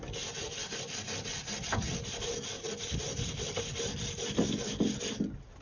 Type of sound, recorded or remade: recorded